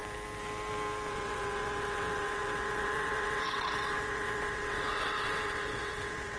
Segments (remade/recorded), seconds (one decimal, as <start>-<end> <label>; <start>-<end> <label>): 0.0-1.1 recorded; 1.1-6.4 remade